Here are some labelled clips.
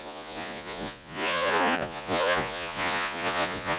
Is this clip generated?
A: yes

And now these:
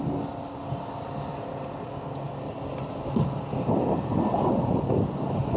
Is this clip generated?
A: no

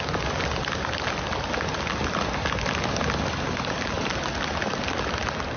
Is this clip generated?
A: no